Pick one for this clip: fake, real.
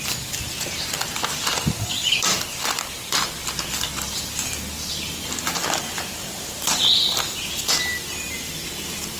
real